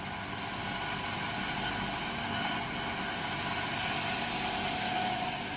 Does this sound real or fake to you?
real